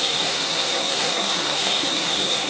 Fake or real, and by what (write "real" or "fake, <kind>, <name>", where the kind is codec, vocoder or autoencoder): fake, codec, SNAC